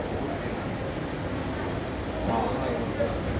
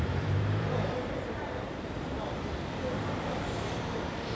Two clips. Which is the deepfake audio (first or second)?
second